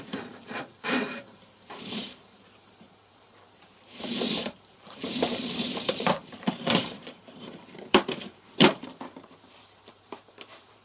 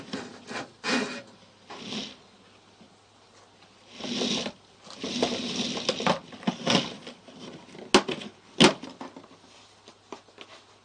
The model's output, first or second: first